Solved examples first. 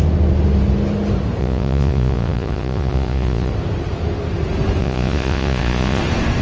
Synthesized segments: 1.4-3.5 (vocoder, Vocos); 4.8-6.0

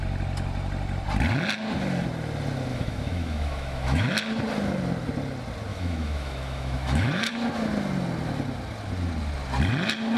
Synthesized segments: 2.7-4.1 (autoencoder, DAC-VAE); 5.7-7.3